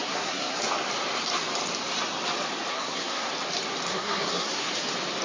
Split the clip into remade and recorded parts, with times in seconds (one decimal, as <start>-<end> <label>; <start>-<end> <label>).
0.0-0.6 remade; 0.6-2.7 recorded; 2.7-3.3 remade; 3.3-3.9 recorded; 3.9-4.7 remade; 4.7-5.2 recorded

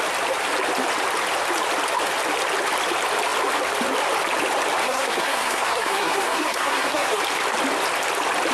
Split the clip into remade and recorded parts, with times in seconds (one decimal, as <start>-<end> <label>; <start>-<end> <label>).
0.0-4.8 recorded; 4.8-7.2 remade; 7.2-8.5 recorded

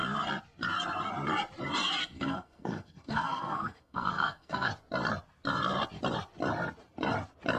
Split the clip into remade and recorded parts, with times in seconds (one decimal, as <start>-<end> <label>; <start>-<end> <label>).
0.0-2.0 recorded; 2.0-4.7 remade; 4.7-7.6 recorded